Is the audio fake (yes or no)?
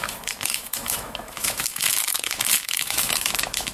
yes